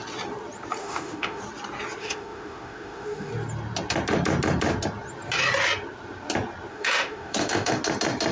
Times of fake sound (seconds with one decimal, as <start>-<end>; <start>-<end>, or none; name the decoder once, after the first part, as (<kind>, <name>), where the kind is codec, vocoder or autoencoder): 0.8-1.4 (autoencoder, DAC-VAE); 2.0-3.3; 6.7-7.8

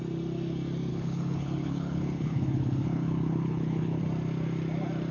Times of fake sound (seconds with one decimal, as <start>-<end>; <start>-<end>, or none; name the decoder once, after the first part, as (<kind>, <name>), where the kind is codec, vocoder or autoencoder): 0.9-4.0 (codec, HILCodec)

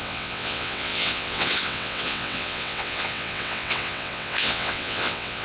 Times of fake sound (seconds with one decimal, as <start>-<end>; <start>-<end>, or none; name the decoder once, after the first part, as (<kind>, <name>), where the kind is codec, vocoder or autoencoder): 0.0-5.4 (vocoder, WaveNeXt)